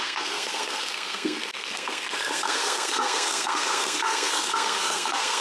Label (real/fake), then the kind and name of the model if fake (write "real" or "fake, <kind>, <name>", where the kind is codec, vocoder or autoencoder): fake, codec, SNAC